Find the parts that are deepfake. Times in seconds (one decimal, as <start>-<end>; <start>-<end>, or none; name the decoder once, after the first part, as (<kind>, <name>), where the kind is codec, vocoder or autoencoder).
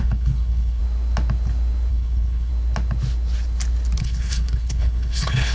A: 0.0-0.8 (codec, HILCodec); 1.9-2.5; 4.0-5.5